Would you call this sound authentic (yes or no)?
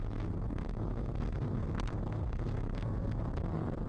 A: no